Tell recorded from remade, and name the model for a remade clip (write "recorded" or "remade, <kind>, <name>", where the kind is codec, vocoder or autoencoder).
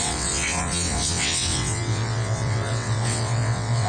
remade, vocoder, WaveNeXt